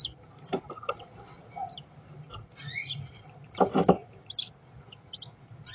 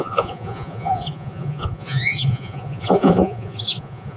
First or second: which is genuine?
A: first